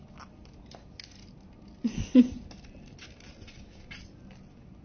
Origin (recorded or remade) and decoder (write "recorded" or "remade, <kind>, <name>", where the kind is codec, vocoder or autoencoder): recorded